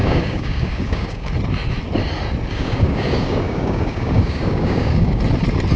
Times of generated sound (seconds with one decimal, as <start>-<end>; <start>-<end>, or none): 0.0-1.3; 2.5-5.2